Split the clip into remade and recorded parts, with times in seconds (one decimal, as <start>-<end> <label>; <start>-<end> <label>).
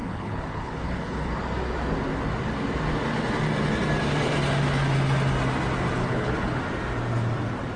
0.0-1.3 remade; 1.3-6.0 recorded; 6.0-6.6 remade; 6.6-7.8 recorded